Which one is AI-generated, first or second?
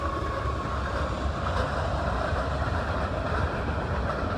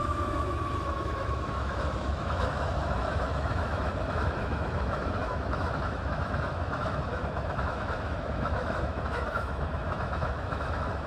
second